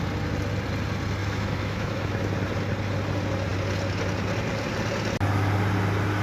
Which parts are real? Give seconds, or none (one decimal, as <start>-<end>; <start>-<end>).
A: 0.0-1.2; 2.3-6.2

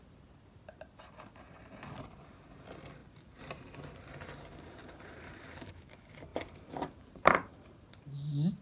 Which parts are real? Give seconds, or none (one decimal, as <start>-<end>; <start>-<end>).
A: 0.0-3.0; 5.7-6.3; 7.5-8.6

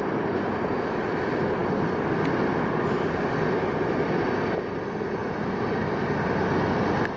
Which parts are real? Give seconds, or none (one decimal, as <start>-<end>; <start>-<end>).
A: 0.0-5.2; 5.8-7.2

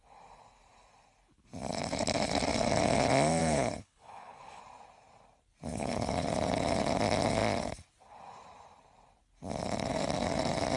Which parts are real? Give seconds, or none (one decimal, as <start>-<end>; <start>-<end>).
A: 0.0-3.4; 4.6-5.7; 6.3-10.8